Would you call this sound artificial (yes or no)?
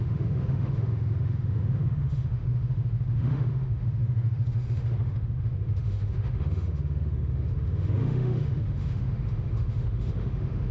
yes